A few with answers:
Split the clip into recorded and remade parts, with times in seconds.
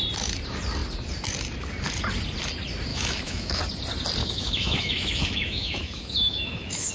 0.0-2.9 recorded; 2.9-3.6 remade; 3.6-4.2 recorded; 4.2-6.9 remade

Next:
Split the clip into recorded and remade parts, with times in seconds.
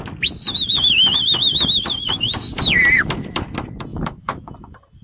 0.0-3.9 recorded; 3.9-4.5 remade; 4.5-5.0 recorded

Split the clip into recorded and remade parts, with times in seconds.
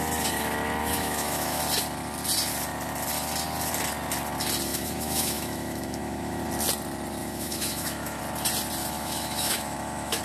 0.0-0.8 recorded; 0.8-1.6 remade; 1.6-4.7 recorded; 4.7-6.4 remade; 6.4-7.2 recorded; 7.2-8.2 remade; 8.2-8.8 recorded; 8.8-10.2 remade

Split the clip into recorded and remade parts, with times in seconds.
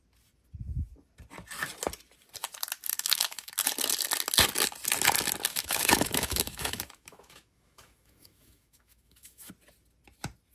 0.0-2.9 recorded; 2.9-3.5 remade; 3.5-5.5 recorded; 5.5-9.5 remade; 9.5-10.5 recorded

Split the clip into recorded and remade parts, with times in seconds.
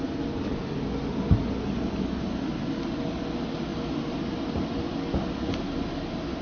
0.0-6.4 recorded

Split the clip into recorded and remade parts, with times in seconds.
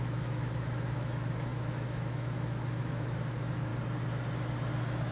0.0-3.7 remade; 3.7-5.1 recorded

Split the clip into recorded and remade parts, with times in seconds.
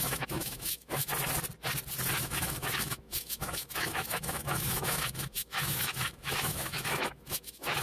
0.0-1.1 remade; 1.1-2.2 recorded; 2.2-7.8 remade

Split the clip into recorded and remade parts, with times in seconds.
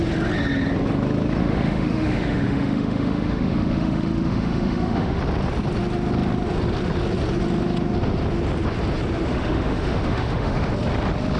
0.0-1.4 recorded; 1.4-5.2 remade; 5.2-9.3 recorded; 9.3-10.7 remade; 10.7-11.4 recorded